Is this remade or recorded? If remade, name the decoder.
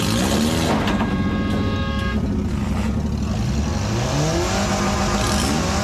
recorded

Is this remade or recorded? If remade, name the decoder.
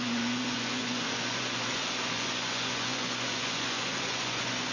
remade, vocoder, Vocos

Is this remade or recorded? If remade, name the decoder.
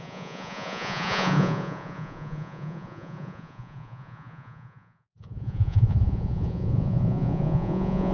remade, vocoder, Vocos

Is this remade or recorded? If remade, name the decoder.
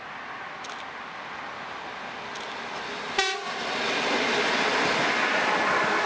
recorded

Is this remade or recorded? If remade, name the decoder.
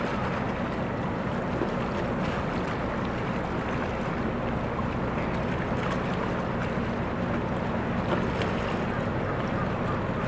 recorded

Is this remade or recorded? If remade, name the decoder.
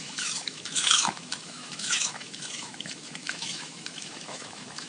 remade, autoencoder, DAC-VAE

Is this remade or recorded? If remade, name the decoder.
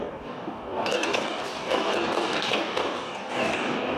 remade, codec, DAC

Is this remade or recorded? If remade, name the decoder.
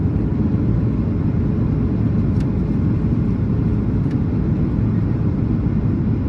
recorded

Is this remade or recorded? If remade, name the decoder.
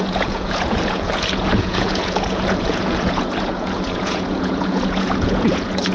remade, vocoder, Vocos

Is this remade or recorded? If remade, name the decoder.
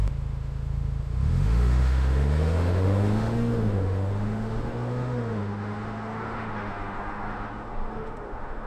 remade, autoencoder, DAC-VAE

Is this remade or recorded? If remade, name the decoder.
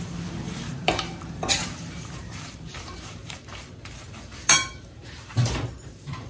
remade, vocoder, BigVGAN v2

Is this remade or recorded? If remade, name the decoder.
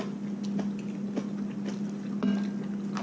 recorded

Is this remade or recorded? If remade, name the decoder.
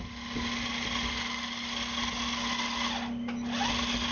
recorded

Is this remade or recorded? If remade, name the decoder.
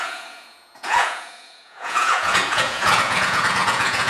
remade, vocoder, Vocos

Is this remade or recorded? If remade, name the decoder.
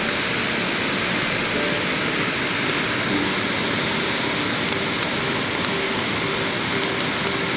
recorded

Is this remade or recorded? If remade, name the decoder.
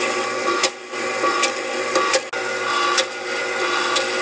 recorded